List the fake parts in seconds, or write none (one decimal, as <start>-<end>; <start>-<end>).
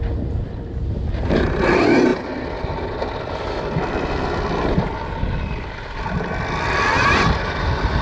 none